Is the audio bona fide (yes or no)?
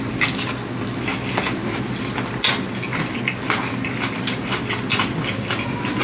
yes